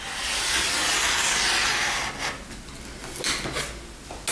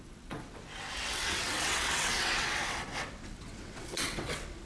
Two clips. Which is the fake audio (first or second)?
second